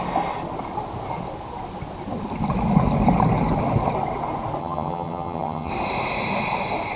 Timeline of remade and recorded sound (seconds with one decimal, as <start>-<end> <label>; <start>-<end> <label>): 0.0-4.6 recorded; 4.6-5.7 remade; 5.7-7.0 recorded